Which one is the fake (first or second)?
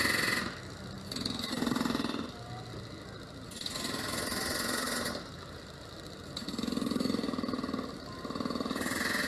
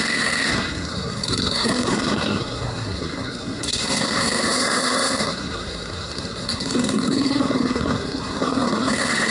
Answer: second